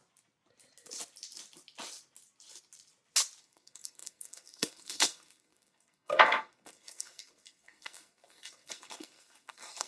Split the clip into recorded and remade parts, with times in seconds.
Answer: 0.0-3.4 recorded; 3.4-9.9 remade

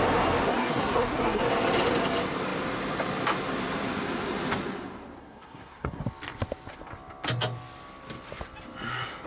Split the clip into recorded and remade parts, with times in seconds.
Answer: 0.0-0.5 recorded; 0.5-1.4 remade; 1.4-5.2 recorded; 5.2-6.0 remade; 6.0-9.3 recorded

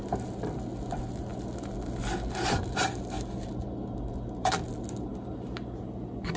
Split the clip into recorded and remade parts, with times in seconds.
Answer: 0.0-6.4 recorded

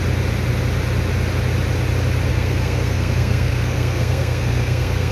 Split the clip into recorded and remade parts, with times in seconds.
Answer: 0.0-2.3 recorded; 2.3-5.1 remade

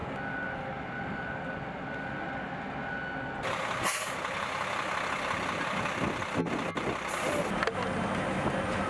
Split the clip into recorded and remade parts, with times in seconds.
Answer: 0.0-8.9 recorded

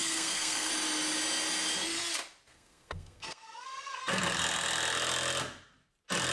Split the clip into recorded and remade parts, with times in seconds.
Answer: 0.0-0.7 remade; 0.7-2.5 recorded; 2.5-4.2 remade; 4.2-6.3 recorded

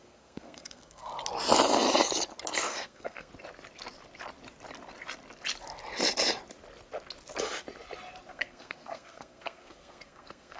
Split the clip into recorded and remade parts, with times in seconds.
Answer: 0.0-1.1 remade; 1.1-2.6 recorded; 2.6-3.3 remade; 3.3-8.3 recorded; 8.3-10.6 remade

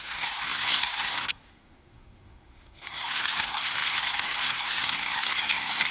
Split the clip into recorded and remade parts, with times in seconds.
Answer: 0.0-5.9 remade